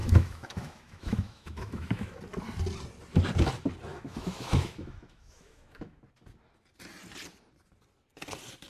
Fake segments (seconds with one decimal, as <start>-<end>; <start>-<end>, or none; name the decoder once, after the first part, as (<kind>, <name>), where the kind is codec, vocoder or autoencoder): 0.0-2.2 (autoencoder, DAC-VAE); 3.9-6.0